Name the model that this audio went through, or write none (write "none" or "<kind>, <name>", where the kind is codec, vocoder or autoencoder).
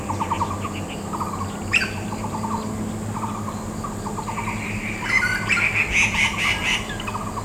none